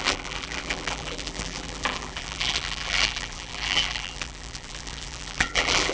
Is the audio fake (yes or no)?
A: yes